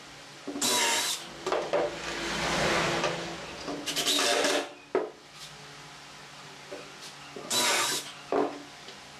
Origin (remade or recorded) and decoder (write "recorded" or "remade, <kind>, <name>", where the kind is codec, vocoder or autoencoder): recorded